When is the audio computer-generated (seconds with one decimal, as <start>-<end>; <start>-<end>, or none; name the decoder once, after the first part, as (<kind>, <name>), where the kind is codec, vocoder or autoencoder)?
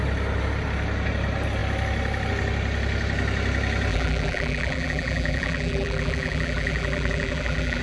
3.9-7.8 (vocoder, BigVGAN v2)